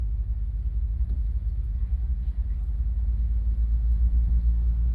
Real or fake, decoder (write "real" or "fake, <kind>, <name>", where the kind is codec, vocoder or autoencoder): real